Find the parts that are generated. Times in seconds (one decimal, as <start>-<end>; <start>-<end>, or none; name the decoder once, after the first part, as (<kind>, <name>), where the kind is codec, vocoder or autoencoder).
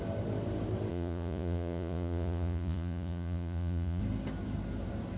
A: 0.9-4.0 (vocoder, Vocos)